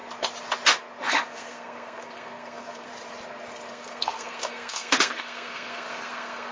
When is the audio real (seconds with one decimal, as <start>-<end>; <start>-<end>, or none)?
0.0-1.0; 2.9-3.7